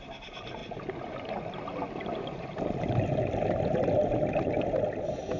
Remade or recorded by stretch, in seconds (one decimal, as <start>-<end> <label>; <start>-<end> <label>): 0.0-5.4 recorded